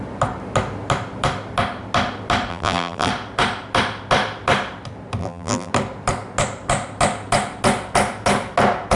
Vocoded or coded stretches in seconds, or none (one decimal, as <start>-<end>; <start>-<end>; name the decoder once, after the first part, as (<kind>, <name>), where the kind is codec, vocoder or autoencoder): 2.5-3.1 (vocoder, BigVGAN v2); 5.2-5.7